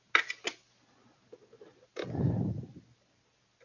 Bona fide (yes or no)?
yes